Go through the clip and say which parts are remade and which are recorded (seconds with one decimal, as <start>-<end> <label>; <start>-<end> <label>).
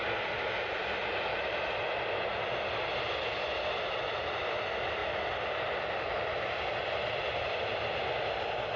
0.0-0.5 remade; 0.5-1.3 recorded; 1.3-1.8 remade; 1.8-8.8 recorded